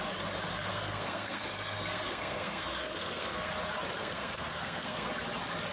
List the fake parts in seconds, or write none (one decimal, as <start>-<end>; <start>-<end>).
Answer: 0.5-3.5; 4.0-5.1

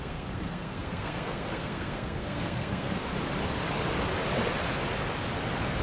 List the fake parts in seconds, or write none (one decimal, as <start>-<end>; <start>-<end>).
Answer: 0.0-3.1

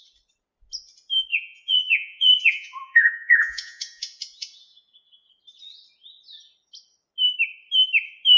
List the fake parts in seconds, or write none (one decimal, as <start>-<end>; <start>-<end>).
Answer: 1.3-5.3

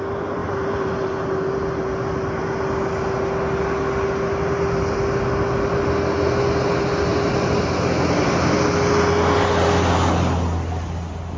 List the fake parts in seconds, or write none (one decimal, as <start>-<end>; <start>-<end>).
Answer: none